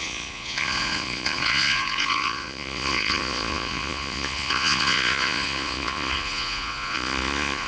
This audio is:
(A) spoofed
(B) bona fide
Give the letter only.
A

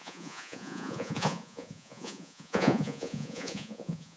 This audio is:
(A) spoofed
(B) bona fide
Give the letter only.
A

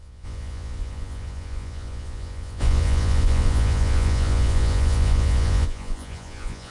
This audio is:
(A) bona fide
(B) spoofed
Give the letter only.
B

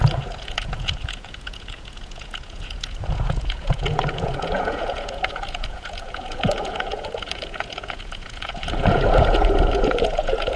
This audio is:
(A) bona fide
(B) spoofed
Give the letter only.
B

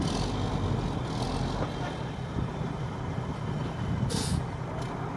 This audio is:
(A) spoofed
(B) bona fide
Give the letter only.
B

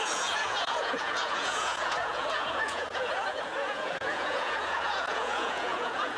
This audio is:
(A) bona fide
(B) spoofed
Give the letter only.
B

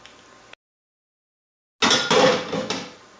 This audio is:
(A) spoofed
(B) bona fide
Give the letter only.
B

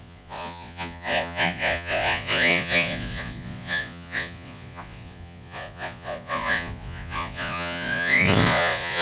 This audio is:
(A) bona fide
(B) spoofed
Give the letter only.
B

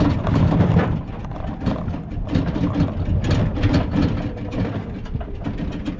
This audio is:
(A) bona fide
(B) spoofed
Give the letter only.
A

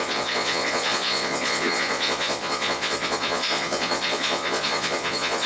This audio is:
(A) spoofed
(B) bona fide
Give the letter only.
A